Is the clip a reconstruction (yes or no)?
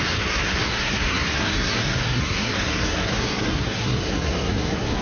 yes